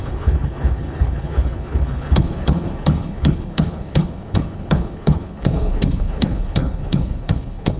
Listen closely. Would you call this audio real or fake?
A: fake